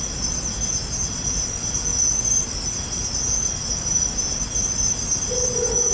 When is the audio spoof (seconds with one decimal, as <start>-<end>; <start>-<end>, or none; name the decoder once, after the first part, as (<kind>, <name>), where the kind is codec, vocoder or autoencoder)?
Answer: none